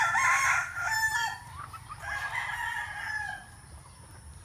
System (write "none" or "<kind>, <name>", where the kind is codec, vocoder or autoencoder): vocoder, BigVGAN v2